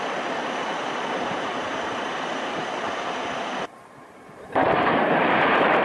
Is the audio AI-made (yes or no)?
yes